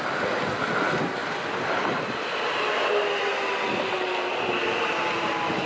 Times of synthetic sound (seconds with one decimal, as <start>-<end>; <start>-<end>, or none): none